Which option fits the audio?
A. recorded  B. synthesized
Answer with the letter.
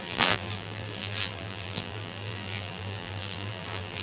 B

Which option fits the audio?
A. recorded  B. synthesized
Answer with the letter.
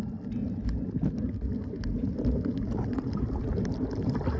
A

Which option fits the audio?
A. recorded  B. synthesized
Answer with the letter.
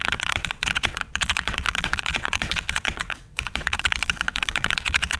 B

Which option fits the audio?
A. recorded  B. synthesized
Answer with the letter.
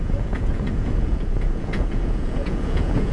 B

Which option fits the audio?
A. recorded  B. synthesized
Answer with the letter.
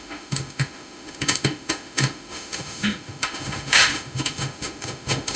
B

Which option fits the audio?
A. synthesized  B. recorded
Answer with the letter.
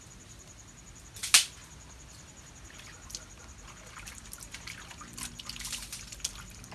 B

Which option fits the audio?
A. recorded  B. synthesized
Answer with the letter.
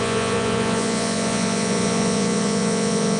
B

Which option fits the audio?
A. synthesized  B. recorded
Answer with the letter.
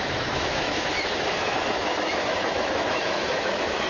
A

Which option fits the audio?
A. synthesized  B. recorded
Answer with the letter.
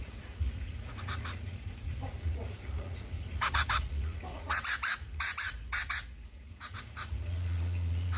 A